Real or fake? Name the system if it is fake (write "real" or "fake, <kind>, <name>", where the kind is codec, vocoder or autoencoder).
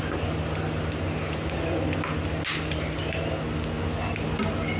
real